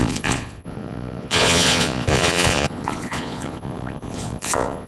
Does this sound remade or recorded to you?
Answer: remade